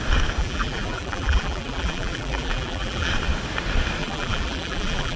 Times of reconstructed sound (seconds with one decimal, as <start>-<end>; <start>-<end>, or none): 0.4-3.1; 4.0-5.2